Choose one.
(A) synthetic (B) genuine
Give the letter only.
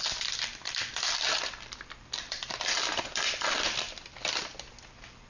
A